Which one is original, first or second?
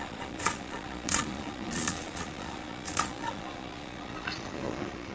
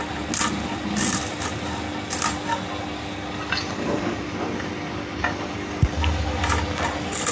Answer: second